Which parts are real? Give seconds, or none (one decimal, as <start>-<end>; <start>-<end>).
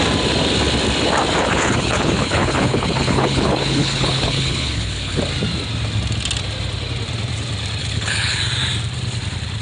0.0-1.4; 5.2-7.8; 8.4-9.6